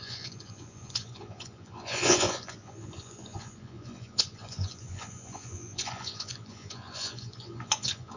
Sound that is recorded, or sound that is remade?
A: remade